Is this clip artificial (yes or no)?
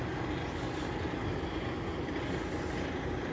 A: no